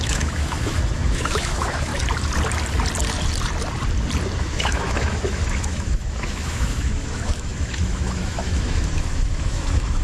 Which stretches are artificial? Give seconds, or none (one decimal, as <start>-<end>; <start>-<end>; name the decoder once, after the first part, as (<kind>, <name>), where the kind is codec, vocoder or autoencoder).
0.0-1.9 (autoencoder, DAC-VAE); 4.4-10.0